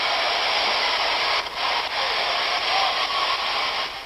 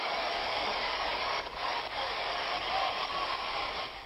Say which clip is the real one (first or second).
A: first